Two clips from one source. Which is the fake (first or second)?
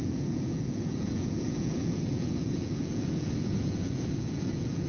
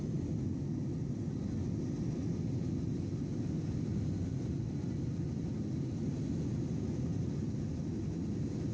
first